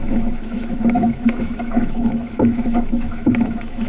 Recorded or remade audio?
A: remade